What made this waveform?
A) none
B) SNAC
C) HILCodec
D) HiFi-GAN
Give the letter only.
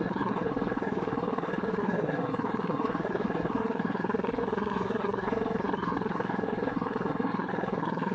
B